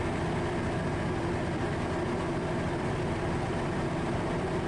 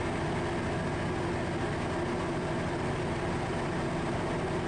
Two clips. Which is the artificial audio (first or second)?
first